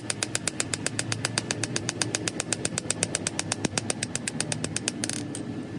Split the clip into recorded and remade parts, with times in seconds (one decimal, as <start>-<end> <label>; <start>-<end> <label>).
0.0-0.7 recorded; 0.7-3.2 remade; 3.2-5.8 recorded